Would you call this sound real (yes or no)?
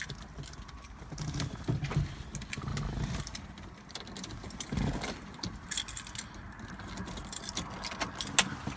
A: yes